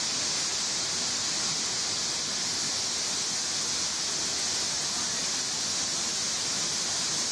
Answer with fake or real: real